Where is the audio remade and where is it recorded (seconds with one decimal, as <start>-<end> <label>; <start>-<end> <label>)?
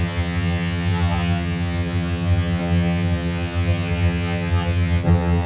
0.0-5.5 remade